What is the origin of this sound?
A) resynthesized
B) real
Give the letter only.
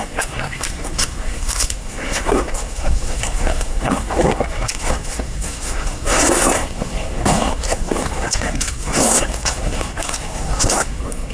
A